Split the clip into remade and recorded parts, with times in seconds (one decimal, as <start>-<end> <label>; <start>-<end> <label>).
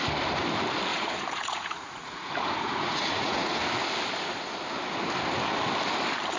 0.0-0.9 recorded; 0.9-3.6 remade; 3.6-6.4 recorded